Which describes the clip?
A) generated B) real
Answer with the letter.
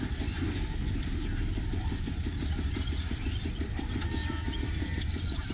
A